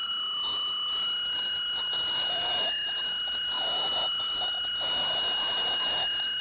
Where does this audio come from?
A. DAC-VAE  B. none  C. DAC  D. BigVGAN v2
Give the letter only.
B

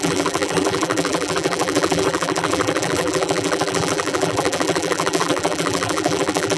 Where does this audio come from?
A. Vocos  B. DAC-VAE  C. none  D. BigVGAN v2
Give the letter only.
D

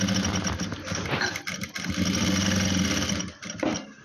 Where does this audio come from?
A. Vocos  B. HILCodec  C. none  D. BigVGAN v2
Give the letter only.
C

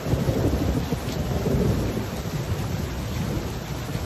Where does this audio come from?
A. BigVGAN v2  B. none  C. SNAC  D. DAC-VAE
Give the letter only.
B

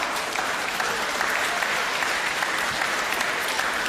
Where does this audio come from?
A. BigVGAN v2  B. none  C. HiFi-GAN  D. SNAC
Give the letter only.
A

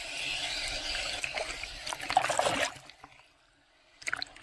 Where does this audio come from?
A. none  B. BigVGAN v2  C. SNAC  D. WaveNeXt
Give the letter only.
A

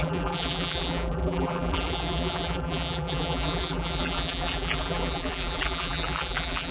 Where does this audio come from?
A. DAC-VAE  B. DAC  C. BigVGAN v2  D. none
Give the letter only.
C